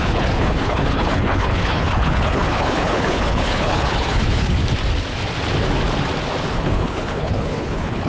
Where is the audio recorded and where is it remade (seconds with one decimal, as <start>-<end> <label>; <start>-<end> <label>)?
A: 0.0-4.6 remade; 4.6-6.5 recorded; 6.5-8.1 remade